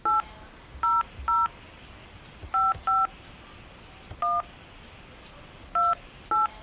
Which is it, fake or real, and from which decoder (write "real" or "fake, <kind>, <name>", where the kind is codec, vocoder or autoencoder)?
real